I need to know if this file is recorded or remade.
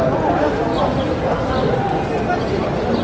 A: recorded